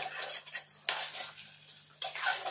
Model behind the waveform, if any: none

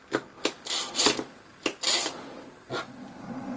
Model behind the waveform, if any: none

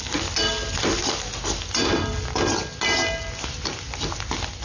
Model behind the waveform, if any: none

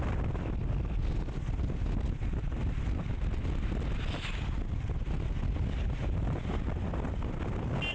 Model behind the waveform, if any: none